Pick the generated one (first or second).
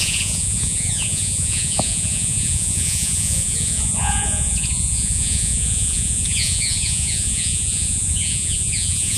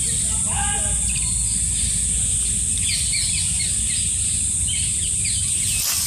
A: first